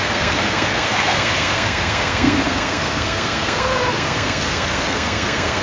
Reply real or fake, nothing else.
fake